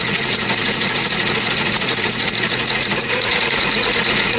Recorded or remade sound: remade